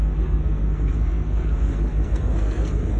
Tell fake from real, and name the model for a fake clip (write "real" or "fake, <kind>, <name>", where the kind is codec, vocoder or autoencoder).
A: fake, codec, SNAC